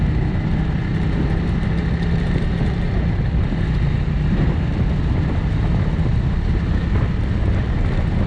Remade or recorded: recorded